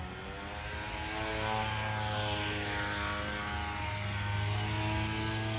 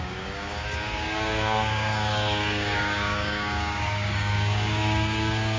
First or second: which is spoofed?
second